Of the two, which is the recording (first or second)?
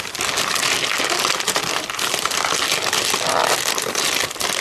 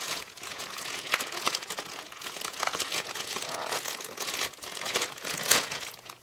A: first